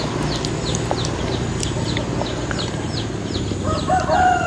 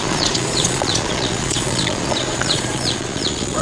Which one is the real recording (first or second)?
first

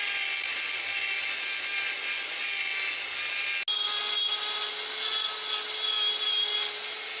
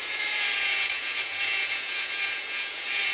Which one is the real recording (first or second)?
first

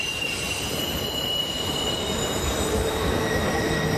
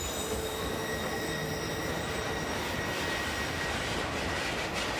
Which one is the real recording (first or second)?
second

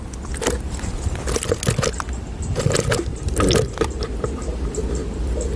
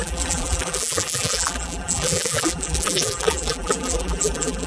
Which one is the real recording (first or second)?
first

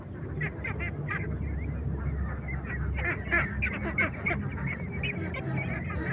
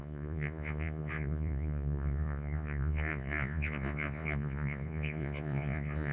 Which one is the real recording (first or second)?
first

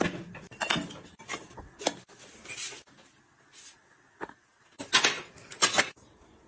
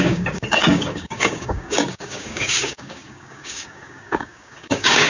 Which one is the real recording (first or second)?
first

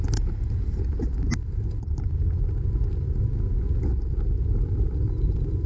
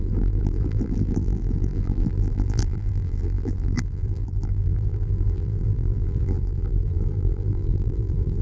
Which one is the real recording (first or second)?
first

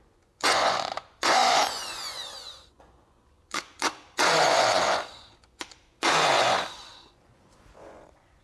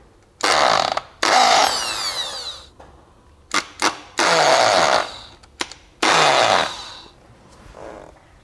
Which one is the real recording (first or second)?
second